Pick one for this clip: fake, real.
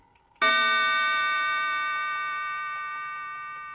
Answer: real